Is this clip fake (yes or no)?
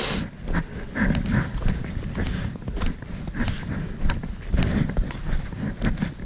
no